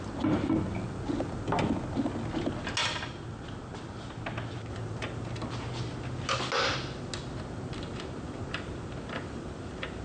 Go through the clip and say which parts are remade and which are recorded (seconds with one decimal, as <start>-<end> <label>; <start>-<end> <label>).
0.0-10.0 recorded